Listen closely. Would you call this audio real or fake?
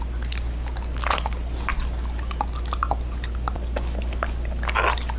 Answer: real